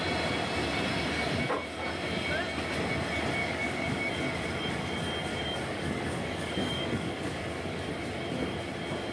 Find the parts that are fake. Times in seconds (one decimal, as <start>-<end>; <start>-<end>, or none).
3.4-4.1; 5.3-7.8